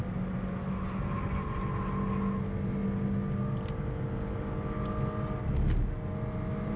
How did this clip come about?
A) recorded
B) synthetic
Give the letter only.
A